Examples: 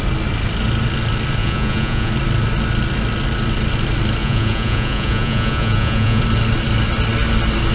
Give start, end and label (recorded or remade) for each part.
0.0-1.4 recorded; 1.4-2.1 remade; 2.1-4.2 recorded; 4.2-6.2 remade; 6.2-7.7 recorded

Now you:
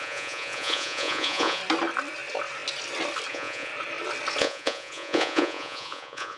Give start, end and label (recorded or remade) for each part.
0.0-1.6 remade; 1.6-3.3 recorded; 3.3-3.7 remade; 3.7-4.4 recorded; 4.4-6.4 remade

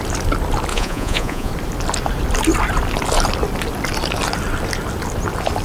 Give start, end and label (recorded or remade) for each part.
0.0-0.7 recorded; 0.7-1.5 remade; 1.5-5.6 recorded